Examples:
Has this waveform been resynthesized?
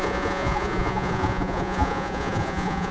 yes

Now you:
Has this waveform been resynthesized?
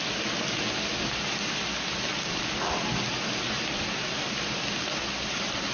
no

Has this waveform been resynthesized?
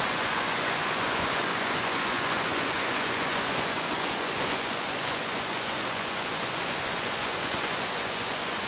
yes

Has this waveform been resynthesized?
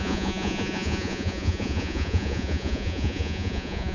yes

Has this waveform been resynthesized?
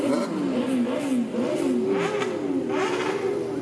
no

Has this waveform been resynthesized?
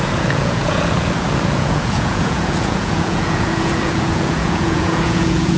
yes